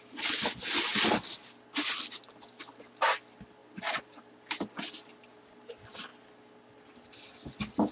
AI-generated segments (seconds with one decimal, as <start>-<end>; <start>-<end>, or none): none